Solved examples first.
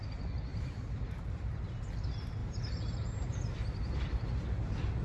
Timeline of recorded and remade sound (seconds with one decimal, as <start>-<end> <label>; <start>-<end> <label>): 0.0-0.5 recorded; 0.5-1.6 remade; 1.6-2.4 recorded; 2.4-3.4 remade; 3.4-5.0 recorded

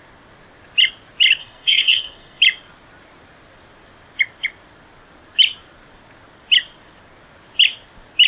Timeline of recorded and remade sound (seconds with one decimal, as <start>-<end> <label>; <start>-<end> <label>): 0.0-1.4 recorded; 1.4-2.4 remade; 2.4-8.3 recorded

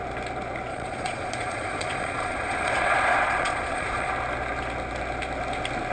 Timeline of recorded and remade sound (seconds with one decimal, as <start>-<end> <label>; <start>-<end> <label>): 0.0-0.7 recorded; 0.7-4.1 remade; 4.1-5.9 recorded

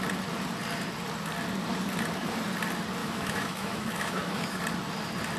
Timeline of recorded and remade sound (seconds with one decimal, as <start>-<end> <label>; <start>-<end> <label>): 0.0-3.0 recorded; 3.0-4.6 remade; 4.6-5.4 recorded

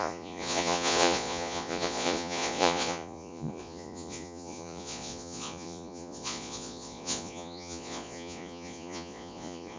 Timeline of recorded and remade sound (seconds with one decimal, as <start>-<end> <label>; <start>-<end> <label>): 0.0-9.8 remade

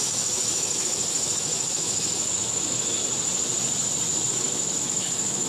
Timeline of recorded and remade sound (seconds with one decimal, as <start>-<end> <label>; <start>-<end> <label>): 0.0-3.0 remade; 3.0-4.3 recorded; 4.3-5.5 remade

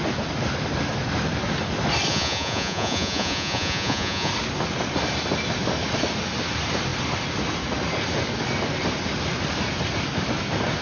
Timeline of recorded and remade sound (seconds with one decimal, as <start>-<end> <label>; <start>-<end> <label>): 0.0-2.1 recorded; 2.1-4.3 remade; 4.3-10.8 recorded